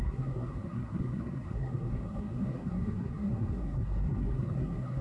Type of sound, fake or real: fake